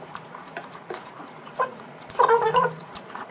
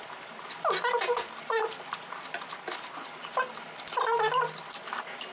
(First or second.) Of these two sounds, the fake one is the first